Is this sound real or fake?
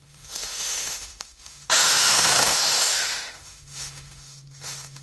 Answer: fake